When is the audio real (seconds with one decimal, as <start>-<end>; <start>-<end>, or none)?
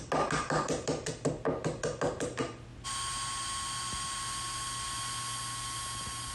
0.0-6.3